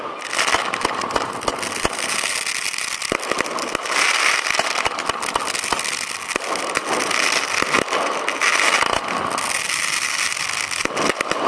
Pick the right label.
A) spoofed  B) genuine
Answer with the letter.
B